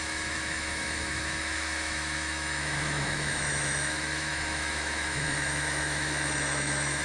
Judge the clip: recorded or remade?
remade